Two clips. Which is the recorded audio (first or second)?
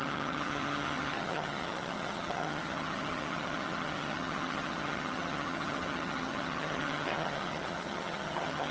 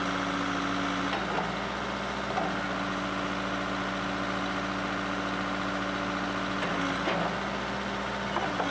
second